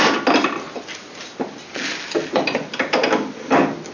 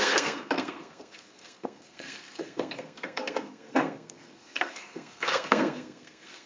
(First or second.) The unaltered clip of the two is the first